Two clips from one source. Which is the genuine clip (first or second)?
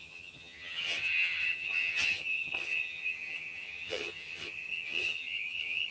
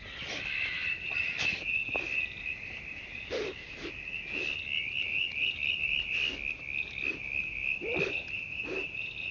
second